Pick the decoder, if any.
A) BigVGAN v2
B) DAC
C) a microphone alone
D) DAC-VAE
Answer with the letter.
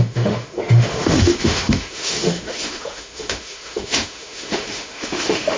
D